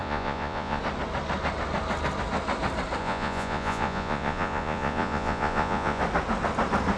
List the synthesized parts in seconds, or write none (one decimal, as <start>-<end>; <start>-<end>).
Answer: 0.0-0.8; 3.0-6.0